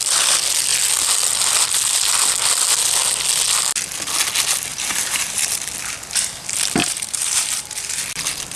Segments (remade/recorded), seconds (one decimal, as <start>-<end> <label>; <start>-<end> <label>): 0.0-4.7 recorded; 4.7-5.5 remade; 5.5-6.8 recorded; 6.8-8.0 remade; 8.0-8.6 recorded